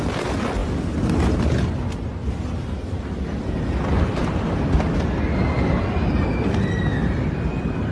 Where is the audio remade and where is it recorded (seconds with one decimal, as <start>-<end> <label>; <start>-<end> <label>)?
0.0-7.9 recorded